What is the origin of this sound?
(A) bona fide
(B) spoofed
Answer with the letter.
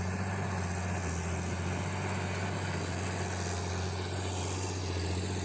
A